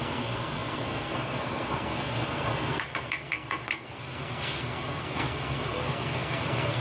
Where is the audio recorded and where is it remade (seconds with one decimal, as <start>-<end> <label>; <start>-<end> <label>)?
0.0-6.8 remade